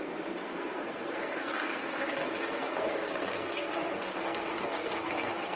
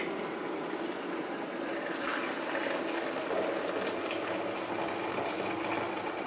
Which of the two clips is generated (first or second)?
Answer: first